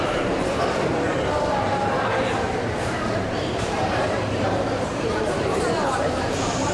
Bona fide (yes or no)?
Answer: no